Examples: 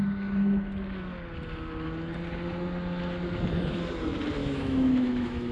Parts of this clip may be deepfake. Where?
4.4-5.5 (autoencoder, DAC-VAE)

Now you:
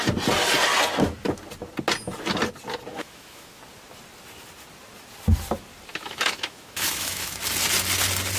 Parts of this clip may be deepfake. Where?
2.9-3.6 (autoencoder, DAC-VAE); 5.9-7.4

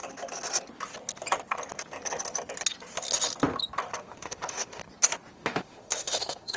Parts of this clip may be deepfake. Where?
4.0-4.8 (autoencoder, DAC-VAE); 5.3-6.6

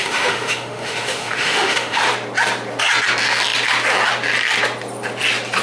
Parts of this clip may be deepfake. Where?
0.0-2.0 (autoencoder, DAC-VAE)